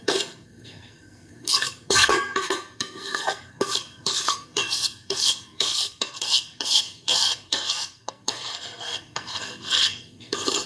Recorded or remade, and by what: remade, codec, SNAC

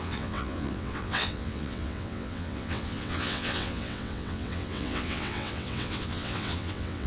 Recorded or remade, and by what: remade, vocoder, WaveNeXt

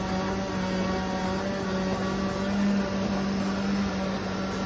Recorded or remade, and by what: recorded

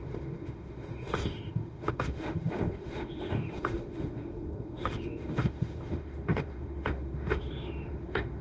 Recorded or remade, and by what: remade, autoencoder, DAC-VAE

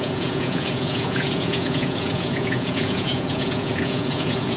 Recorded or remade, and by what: remade, vocoder, Vocos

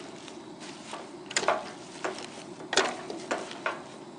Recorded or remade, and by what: recorded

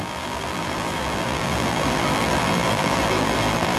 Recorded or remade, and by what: remade, vocoder, BigVGAN v2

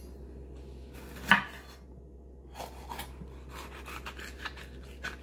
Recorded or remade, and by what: recorded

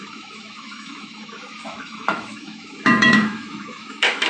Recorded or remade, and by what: remade, autoencoder, DAC-VAE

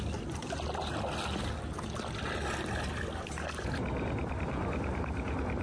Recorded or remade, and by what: recorded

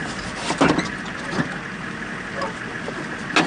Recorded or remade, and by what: recorded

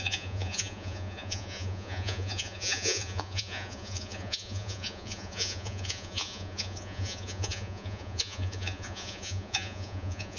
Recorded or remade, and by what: remade, vocoder, Vocos